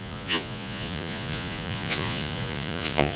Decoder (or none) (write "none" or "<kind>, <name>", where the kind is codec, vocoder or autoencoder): vocoder, Vocos